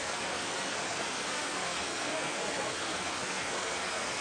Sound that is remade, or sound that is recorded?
remade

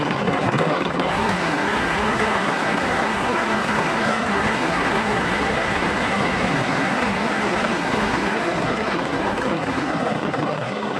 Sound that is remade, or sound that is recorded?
remade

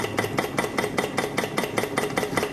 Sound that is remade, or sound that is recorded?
recorded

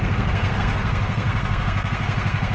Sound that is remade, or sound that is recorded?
remade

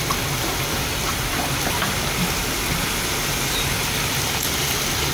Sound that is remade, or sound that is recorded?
recorded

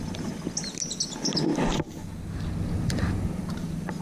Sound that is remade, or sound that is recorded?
recorded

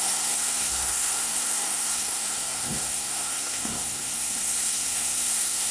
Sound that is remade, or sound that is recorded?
remade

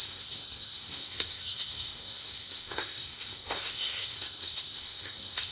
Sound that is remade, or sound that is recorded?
remade